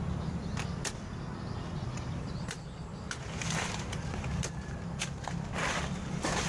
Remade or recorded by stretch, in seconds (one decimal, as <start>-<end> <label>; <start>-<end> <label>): 0.0-0.4 remade; 0.4-1.2 recorded; 1.2-2.9 remade; 2.9-3.4 recorded; 3.4-6.5 remade